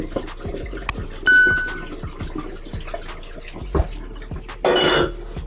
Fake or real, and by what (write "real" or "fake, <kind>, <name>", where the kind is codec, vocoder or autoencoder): real